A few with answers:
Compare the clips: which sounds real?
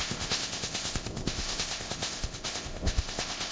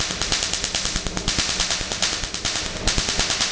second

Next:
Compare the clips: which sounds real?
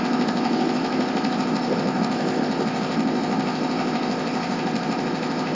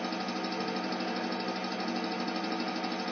second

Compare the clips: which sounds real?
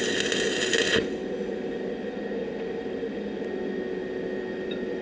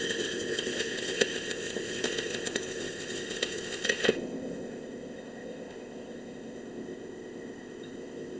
first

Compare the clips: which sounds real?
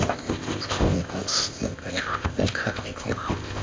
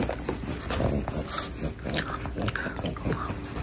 second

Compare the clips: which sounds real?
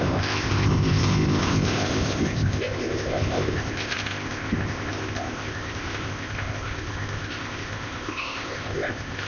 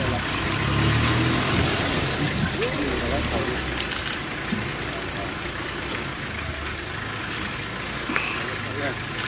second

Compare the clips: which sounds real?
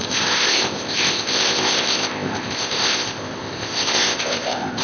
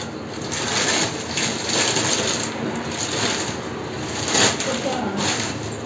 second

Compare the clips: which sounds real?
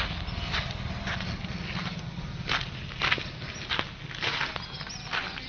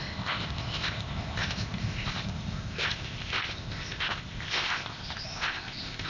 first